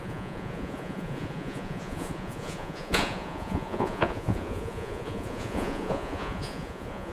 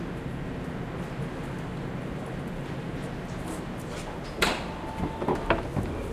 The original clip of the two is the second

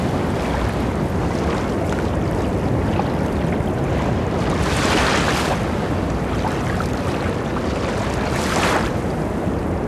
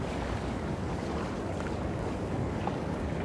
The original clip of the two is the first